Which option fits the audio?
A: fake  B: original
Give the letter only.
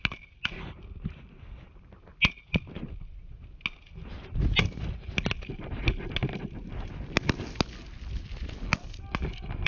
B